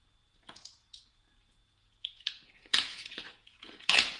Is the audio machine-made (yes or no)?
yes